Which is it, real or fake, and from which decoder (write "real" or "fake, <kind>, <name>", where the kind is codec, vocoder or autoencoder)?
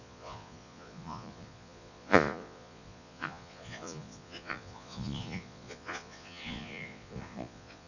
fake, vocoder, Vocos